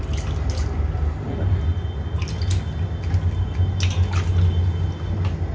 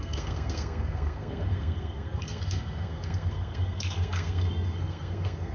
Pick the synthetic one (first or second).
second